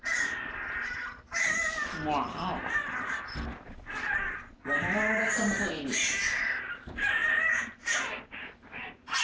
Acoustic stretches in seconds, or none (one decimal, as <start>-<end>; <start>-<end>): 0.0-7.0